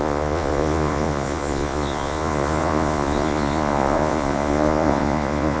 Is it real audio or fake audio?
fake